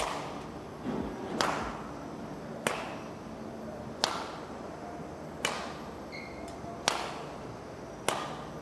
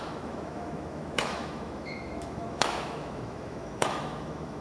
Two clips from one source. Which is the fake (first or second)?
second